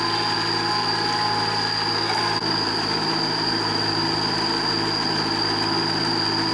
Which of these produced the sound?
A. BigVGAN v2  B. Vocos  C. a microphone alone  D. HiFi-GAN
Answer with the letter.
C